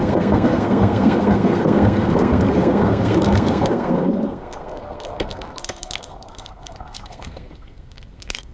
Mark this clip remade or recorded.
remade